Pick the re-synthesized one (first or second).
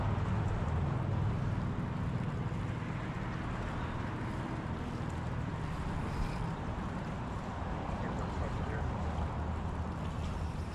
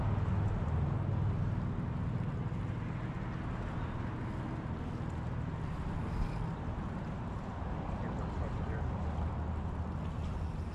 first